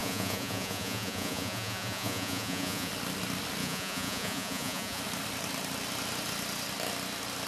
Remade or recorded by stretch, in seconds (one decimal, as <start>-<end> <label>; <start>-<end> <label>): 0.0-2.9 remade; 2.9-3.6 recorded; 3.6-5.0 remade; 5.0-7.5 recorded